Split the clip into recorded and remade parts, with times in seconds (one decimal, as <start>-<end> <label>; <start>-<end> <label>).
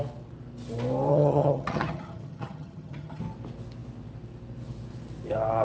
0.0-1.1 recorded; 1.1-3.2 remade; 3.2-5.6 recorded